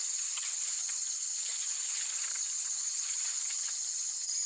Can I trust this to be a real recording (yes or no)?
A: no